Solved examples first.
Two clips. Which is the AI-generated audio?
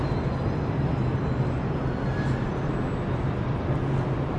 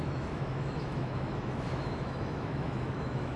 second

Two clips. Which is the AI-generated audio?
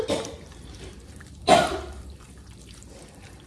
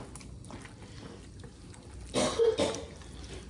first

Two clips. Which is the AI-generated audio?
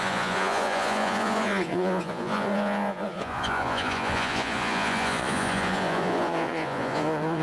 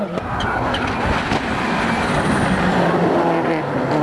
first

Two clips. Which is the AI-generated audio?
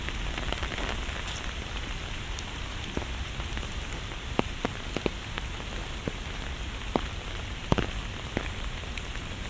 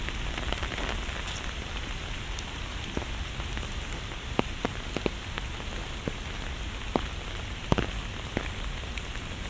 first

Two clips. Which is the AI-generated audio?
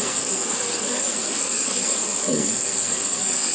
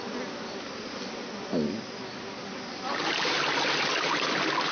first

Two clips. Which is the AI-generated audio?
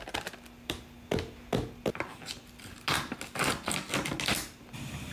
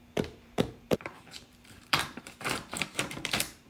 second